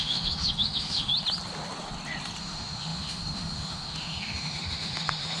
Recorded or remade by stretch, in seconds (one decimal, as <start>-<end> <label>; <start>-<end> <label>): 0.0-1.1 remade; 1.1-2.4 recorded; 2.4-5.4 remade